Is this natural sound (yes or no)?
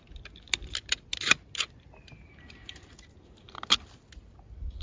yes